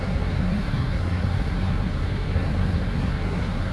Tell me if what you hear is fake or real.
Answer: fake